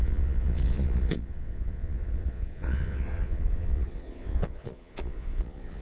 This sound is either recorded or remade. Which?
remade